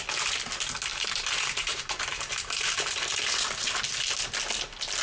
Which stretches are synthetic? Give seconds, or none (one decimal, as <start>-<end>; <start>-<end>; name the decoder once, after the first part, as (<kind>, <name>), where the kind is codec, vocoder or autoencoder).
0.9-3.9 (vocoder, BigVGAN v2)